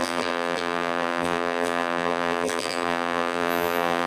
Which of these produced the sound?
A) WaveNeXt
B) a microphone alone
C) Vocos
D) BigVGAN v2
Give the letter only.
D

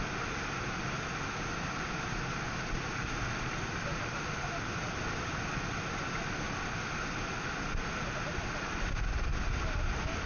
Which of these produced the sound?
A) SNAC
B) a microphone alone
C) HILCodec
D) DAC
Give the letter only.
B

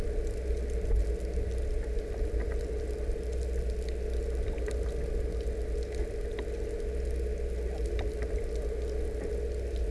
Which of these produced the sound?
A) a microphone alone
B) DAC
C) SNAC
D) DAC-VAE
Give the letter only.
A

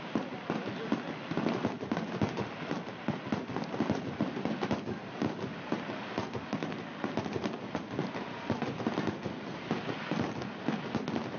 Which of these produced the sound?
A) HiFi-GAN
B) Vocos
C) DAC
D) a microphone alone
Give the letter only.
D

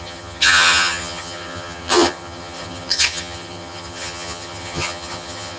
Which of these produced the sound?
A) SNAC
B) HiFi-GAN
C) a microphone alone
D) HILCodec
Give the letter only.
B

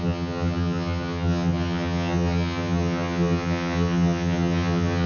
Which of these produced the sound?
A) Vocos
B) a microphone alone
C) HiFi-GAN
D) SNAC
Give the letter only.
C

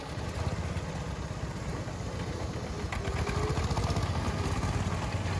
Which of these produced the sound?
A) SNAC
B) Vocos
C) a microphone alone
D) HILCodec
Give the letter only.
C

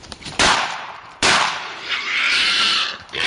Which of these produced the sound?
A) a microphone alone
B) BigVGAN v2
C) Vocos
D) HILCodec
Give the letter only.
B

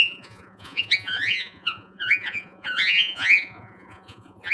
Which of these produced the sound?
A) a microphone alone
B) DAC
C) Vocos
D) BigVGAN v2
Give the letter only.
C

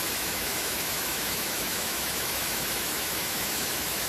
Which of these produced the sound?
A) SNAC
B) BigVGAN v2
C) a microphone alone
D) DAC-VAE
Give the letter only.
D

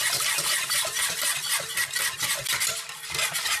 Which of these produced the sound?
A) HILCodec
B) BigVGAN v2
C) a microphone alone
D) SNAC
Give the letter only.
C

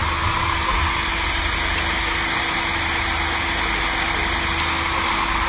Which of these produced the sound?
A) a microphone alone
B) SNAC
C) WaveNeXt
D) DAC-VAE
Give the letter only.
A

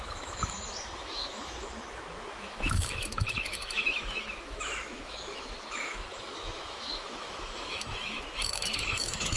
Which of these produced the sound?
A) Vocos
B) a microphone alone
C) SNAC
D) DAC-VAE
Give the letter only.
D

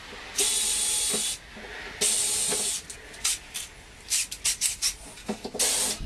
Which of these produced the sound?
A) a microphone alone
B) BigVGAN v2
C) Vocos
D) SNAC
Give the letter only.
A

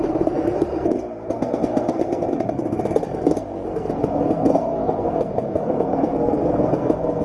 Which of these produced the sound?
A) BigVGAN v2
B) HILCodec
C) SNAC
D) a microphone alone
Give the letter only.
C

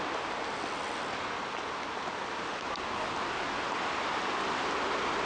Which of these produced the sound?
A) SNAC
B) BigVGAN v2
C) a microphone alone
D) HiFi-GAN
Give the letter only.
C